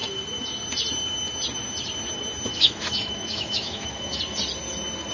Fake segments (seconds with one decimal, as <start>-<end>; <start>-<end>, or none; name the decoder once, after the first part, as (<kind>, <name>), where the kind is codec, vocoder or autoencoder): 2.5-4.2 (autoencoder, DAC-VAE)